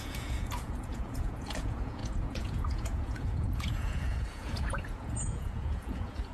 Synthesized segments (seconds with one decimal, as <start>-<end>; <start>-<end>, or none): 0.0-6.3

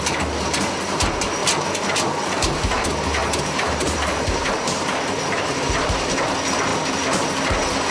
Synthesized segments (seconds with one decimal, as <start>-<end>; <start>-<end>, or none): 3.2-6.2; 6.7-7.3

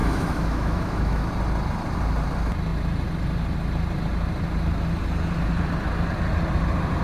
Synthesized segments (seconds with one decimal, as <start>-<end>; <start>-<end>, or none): 0.0-1.3

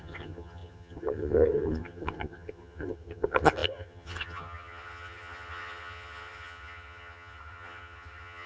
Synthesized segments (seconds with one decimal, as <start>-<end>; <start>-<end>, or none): 0.0-8.5

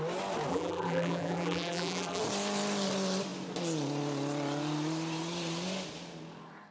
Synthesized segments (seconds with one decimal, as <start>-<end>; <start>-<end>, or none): 0.5-2.2

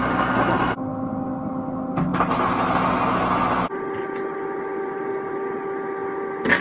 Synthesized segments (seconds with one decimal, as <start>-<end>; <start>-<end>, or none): none